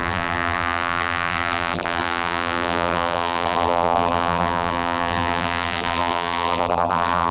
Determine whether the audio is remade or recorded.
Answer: remade